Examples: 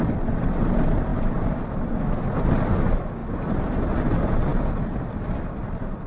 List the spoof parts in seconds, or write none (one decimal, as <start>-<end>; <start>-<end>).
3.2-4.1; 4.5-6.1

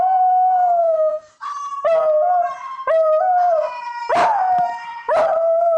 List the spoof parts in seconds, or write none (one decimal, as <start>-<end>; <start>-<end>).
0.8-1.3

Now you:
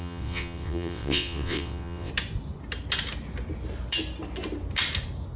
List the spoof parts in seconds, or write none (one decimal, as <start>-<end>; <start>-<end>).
0.0-2.1

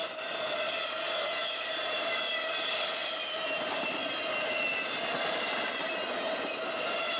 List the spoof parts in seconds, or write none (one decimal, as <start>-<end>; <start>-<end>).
none

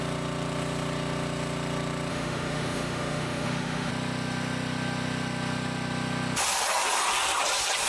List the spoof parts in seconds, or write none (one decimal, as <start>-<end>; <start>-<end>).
2.1-3.9

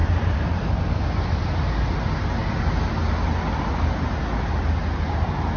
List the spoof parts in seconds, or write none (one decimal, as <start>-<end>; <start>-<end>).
none

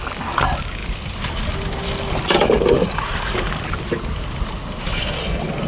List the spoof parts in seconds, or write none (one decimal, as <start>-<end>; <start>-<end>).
none